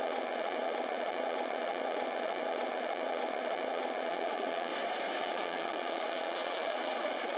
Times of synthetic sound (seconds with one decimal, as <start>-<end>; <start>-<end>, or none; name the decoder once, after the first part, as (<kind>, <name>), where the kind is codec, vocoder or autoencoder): 0.0-4.7 (vocoder, Vocos); 5.2-7.4